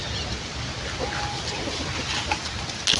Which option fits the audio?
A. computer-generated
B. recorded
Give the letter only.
B